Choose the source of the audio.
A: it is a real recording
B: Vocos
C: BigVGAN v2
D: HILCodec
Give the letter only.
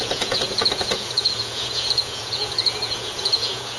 B